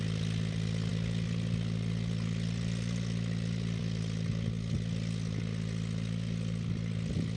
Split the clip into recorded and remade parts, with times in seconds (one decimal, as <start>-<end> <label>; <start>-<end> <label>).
0.0-7.4 recorded